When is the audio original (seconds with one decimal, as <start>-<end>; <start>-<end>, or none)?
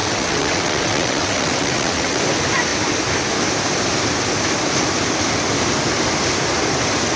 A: 2.2-7.2